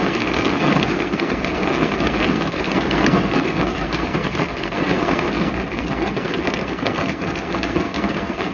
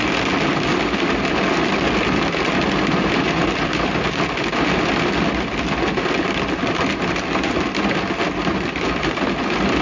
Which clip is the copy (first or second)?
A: first